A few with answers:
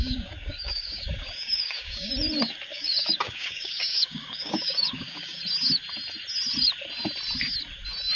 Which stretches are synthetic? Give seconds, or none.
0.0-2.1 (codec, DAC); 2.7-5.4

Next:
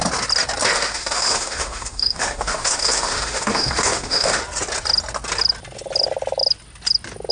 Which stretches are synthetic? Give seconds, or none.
0.7-4.4 (autoencoder, DAC-VAE)

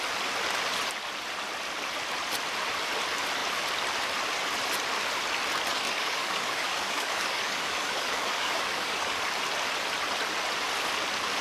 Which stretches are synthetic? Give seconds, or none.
5.7-9.2 (codec, DAC)

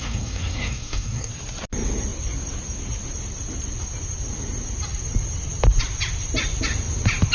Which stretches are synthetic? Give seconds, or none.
0.0-1.3 (codec, SNAC)

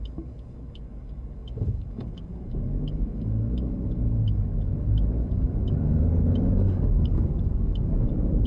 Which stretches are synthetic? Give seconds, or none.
0.0-8.5 (codec, DAC)